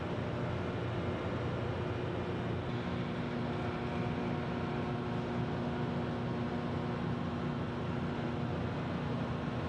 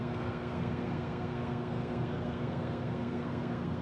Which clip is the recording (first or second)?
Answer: first